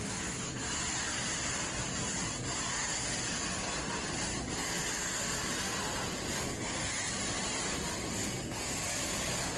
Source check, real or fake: real